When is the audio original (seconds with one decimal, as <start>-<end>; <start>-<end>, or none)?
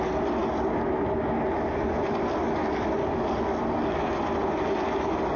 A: 0.0-5.4